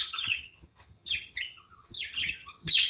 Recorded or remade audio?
remade